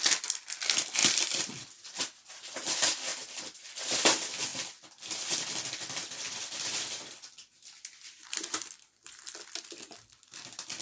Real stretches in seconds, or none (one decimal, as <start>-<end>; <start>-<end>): 0.0-3.1; 3.8-6.0; 10.2-10.8